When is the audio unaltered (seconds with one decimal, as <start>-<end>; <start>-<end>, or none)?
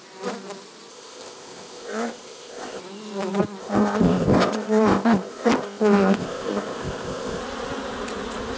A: 0.0-0.9; 2.8-3.6; 7.4-8.6